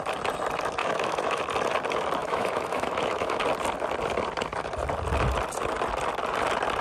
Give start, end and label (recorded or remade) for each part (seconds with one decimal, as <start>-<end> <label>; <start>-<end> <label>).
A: 0.0-0.8 recorded; 0.8-1.4 remade; 1.4-2.2 recorded; 2.2-3.4 remade; 3.4-6.8 recorded